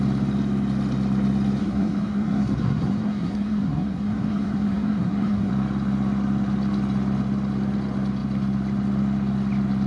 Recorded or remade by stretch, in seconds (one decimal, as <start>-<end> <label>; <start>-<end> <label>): 0.0-1.6 recorded; 1.6-5.5 remade; 5.5-9.9 recorded